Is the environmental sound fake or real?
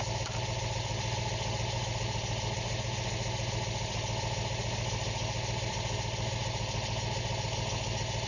real